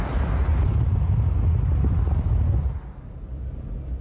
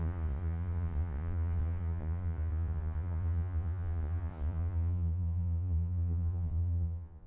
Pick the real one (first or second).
first